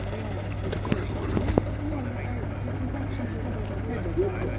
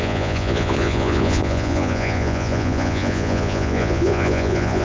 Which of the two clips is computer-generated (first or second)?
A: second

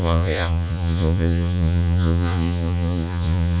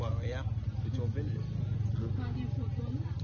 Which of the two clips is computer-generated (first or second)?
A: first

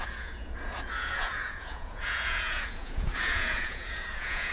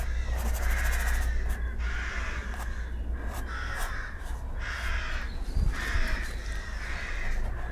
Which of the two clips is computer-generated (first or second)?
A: first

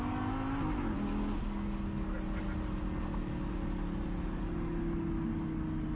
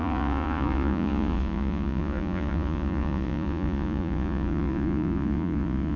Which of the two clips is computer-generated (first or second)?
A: second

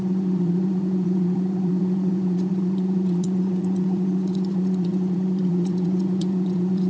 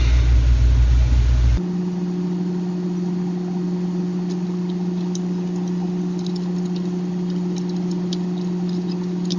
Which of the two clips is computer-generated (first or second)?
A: first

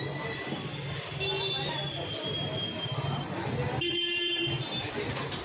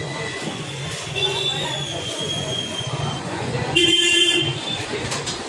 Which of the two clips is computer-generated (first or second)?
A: second